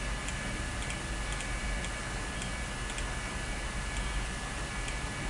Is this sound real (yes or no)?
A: yes